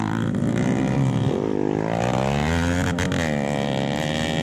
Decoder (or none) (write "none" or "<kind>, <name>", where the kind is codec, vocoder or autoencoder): none